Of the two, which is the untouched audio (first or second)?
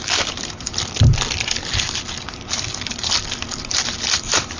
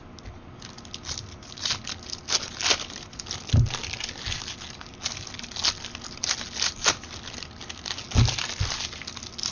second